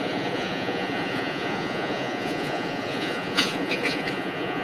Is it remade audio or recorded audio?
remade